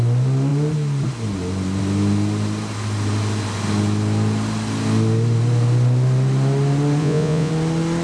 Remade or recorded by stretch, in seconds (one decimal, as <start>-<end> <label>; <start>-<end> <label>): 0.0-7.0 recorded; 7.0-7.5 remade; 7.5-8.0 recorded